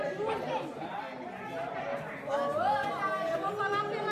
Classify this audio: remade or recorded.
recorded